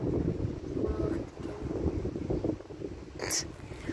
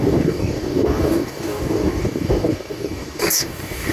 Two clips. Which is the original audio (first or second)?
first